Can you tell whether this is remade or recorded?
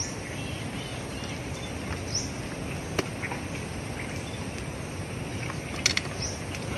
recorded